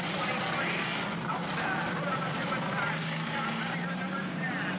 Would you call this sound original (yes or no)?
yes